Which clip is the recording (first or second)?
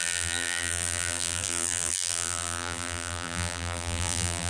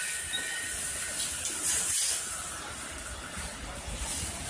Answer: second